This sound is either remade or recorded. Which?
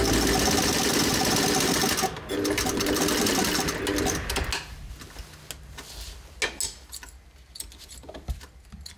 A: recorded